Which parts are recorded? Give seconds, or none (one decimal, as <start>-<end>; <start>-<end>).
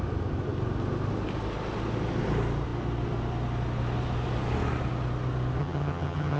0.0-5.6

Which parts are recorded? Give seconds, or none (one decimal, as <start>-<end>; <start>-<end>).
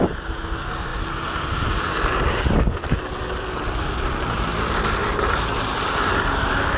0.0-6.8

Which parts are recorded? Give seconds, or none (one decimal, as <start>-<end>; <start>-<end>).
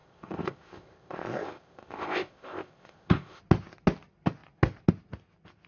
3.4-5.7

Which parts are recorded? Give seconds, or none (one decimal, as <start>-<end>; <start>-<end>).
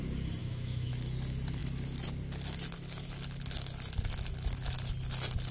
0.0-0.4; 0.9-5.5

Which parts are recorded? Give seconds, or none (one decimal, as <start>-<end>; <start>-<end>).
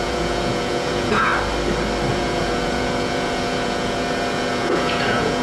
1.3-2.1